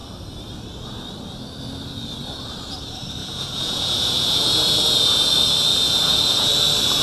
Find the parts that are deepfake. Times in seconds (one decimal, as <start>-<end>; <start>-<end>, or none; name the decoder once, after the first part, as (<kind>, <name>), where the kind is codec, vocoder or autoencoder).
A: 3.2-5.3 (vocoder, Vocos); 5.7-6.5

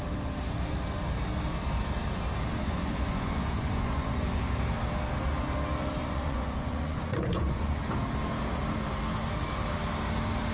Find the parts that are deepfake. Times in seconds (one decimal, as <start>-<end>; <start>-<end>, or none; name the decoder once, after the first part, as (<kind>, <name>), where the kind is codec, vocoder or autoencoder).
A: 2.6-4.4 (vocoder, Vocos); 6.0-7.8

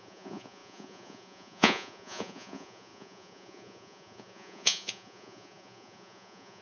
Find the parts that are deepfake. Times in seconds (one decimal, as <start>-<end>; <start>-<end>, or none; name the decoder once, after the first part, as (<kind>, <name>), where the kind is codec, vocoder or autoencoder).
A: 0.0-6.6 (vocoder, Vocos)

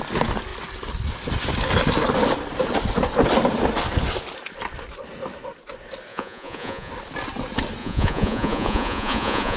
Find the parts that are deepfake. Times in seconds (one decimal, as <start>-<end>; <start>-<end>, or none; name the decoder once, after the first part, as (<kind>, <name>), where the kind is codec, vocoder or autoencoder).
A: 6.1-6.9 (vocoder, Vocos); 7.8-9.6

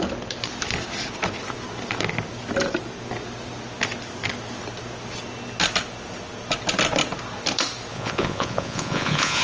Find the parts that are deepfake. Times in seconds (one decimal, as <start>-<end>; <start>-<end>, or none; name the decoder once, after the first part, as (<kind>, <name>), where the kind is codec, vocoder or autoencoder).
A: 7.9-9.4 (vocoder, Vocos)

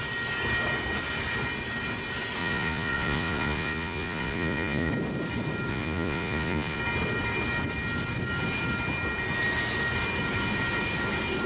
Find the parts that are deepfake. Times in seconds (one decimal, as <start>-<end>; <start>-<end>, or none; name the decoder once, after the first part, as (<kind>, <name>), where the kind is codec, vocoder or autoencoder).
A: 2.4-4.9 (vocoder, Vocos); 5.7-6.8

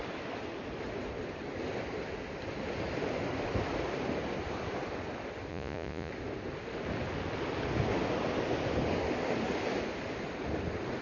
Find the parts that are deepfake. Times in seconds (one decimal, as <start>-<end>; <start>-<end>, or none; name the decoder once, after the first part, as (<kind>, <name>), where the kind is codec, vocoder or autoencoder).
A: 5.5-6.1 (vocoder, Vocos)

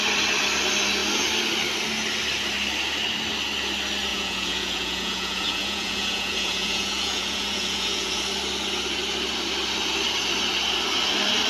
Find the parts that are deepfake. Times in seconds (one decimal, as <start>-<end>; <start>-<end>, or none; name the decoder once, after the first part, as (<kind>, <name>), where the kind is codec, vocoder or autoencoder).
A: 4.1-8.2 (vocoder, Vocos)